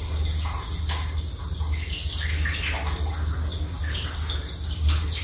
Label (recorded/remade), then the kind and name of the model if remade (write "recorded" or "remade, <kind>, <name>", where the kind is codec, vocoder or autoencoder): recorded